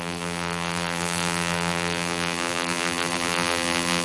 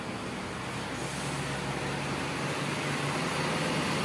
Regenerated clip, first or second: first